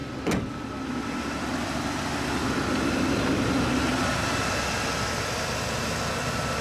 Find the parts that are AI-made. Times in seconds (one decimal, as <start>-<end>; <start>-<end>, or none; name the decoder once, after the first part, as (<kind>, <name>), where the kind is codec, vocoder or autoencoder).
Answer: none